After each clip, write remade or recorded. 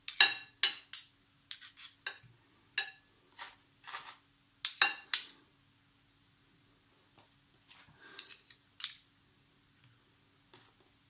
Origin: recorded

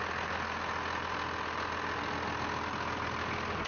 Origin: recorded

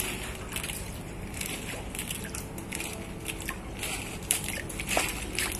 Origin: remade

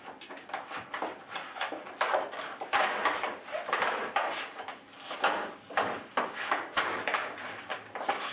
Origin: recorded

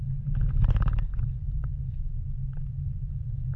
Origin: recorded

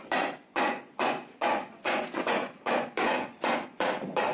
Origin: remade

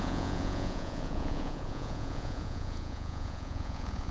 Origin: remade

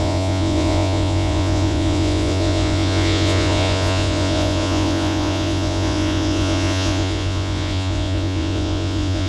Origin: remade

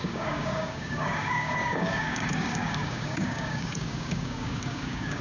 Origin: remade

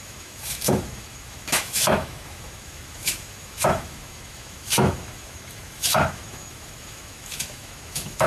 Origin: remade